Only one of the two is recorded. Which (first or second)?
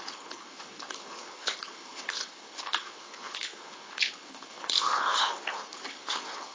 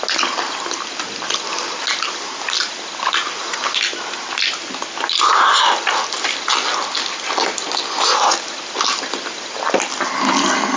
second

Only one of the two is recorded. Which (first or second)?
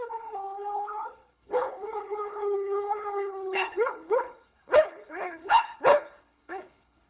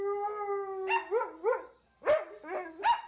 second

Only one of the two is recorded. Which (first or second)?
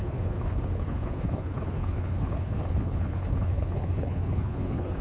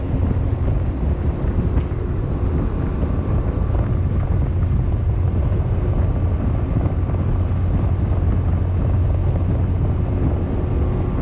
second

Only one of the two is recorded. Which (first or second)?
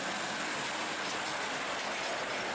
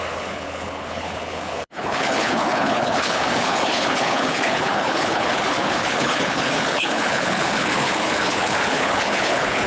first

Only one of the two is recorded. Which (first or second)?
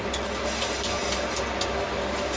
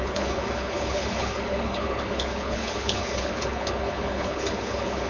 first